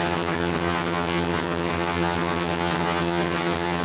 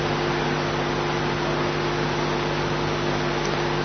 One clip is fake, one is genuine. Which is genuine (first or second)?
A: second